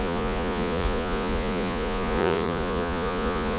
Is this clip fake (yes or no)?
yes